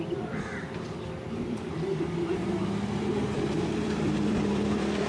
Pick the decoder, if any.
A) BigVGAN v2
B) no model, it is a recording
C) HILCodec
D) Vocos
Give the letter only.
A